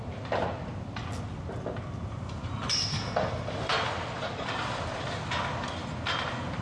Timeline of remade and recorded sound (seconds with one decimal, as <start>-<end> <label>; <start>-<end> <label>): 0.0-6.6 recorded